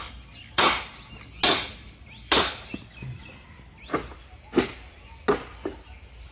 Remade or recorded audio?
recorded